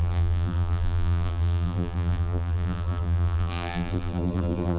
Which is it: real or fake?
fake